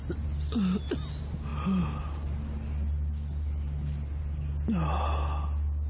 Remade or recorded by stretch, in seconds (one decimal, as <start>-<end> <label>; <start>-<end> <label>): 0.0-5.9 recorded